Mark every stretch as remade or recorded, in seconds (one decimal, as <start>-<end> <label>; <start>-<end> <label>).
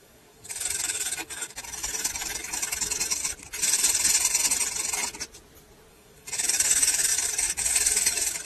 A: 0.0-3.2 remade; 3.2-5.9 recorded; 5.9-8.4 remade